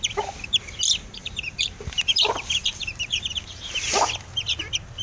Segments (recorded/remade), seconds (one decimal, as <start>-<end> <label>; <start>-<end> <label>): 0.0-1.2 recorded; 1.2-3.9 remade; 3.9-5.0 recorded